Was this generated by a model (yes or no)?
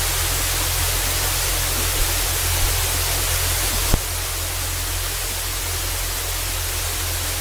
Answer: no